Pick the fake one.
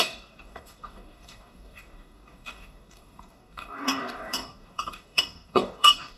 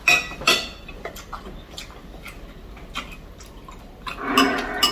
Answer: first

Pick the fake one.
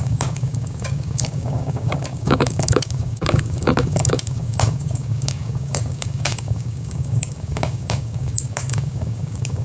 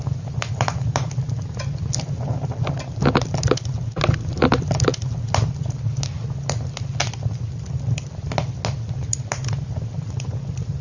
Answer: first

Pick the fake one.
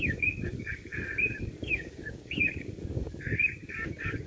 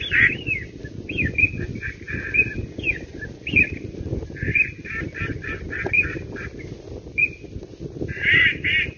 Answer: first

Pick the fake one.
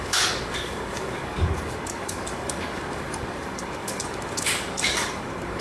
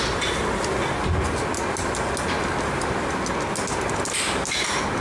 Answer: first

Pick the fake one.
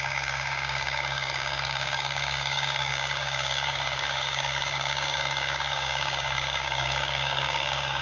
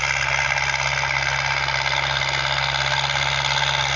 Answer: first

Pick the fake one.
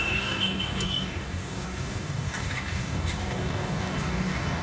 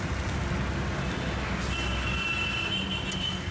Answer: first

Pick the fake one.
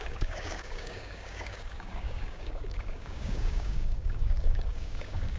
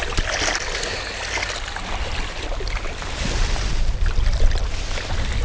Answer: first